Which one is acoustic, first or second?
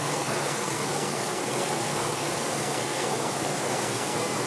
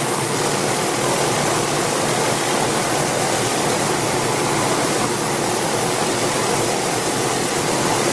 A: second